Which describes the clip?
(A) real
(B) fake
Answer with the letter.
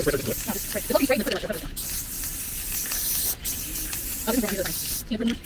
A